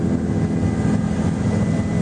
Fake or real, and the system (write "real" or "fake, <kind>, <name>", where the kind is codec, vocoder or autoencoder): real